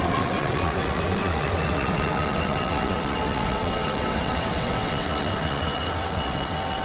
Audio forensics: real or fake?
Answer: fake